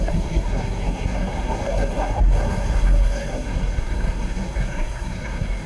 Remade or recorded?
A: remade